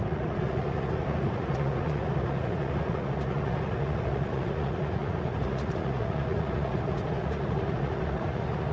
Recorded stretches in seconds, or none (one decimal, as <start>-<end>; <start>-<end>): none